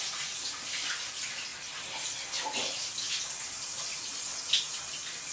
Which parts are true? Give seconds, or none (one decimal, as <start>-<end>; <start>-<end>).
0.0-3.9; 4.5-5.3